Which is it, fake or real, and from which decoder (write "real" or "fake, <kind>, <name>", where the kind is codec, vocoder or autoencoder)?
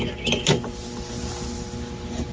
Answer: real